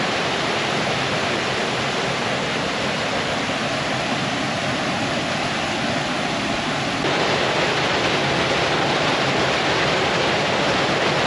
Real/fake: real